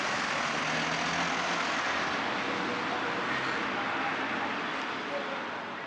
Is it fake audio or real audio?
real